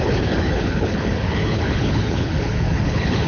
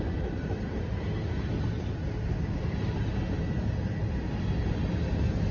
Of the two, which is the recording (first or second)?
second